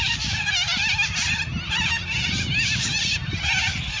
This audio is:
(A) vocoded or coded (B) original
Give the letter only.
B